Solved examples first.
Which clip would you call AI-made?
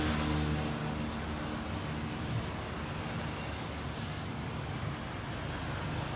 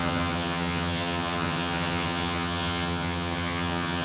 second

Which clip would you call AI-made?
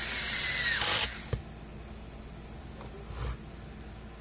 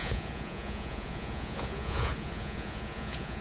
second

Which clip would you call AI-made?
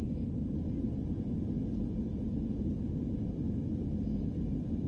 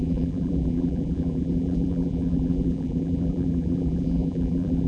second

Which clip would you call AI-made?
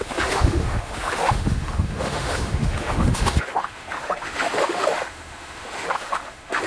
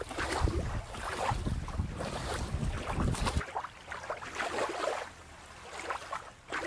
first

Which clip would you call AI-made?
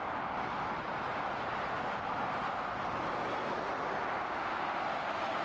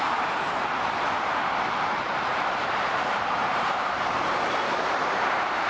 second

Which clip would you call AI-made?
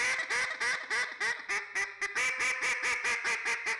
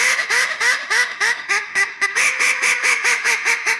second